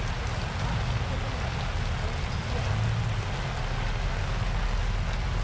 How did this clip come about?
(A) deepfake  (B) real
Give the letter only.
B